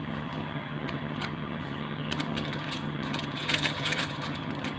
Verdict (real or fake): fake